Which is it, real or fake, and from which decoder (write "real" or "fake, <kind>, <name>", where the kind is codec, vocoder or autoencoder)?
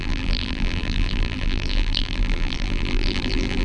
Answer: fake, vocoder, BigVGAN v2